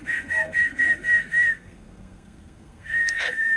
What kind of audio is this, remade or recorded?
remade